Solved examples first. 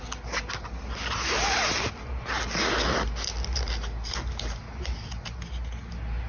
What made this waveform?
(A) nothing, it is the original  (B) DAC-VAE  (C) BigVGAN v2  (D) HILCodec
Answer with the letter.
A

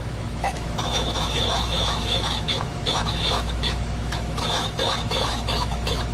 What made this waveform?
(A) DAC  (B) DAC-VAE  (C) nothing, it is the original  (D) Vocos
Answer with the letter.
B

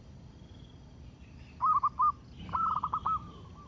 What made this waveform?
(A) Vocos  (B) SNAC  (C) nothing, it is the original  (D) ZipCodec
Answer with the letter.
C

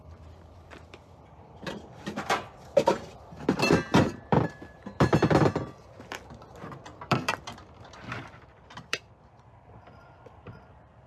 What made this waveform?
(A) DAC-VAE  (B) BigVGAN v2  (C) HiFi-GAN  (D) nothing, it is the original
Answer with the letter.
B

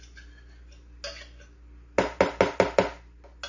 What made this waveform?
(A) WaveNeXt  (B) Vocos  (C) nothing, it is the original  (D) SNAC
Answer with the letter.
C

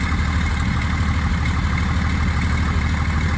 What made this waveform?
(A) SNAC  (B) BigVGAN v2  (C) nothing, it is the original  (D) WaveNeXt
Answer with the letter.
C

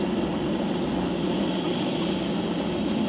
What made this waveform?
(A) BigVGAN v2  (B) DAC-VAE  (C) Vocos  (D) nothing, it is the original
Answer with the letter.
D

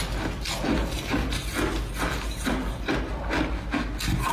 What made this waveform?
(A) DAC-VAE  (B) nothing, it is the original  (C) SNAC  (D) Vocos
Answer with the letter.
B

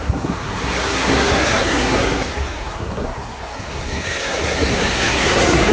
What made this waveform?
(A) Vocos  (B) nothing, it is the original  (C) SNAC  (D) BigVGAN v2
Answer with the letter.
C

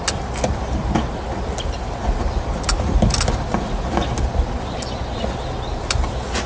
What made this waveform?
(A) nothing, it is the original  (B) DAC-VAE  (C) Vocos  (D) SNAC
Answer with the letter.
A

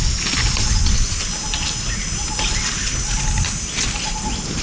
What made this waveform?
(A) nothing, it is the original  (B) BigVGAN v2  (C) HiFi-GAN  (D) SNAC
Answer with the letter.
A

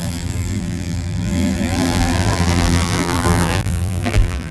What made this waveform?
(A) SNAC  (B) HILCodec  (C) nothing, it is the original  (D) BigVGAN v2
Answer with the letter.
D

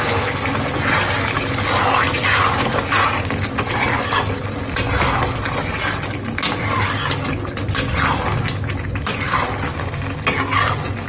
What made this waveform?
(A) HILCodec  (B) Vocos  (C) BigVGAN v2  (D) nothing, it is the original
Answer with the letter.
D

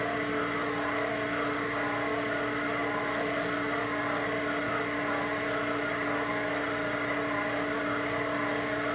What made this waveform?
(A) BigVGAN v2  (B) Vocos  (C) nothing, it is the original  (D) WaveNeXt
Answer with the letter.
C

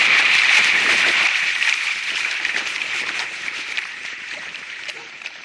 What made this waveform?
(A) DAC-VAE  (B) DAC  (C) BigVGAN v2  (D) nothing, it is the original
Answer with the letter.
C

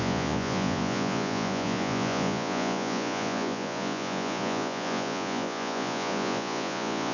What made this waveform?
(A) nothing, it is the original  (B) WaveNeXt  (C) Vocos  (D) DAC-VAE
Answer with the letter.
C